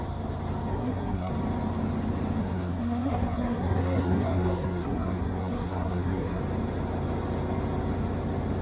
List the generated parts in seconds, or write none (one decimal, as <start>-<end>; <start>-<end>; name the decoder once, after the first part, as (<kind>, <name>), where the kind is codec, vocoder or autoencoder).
0.7-1.3 (codec, SNAC); 2.4-6.4